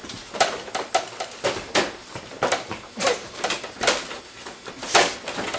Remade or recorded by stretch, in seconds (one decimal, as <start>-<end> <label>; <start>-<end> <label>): 0.0-2.0 recorded; 2.0-4.2 remade; 4.2-5.6 recorded

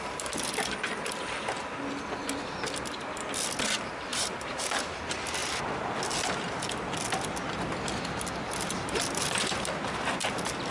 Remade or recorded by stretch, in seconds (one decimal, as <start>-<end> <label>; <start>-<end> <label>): 0.0-4.1 recorded; 4.1-5.0 remade; 5.0-10.7 recorded

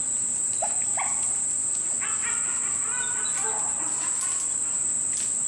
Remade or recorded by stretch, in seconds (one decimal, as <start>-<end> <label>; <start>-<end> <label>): 0.0-0.8 remade; 0.8-5.5 recorded

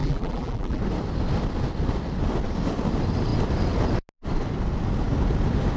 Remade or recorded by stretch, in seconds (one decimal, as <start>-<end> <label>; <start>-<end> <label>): 0.0-0.8 remade; 0.8-5.8 recorded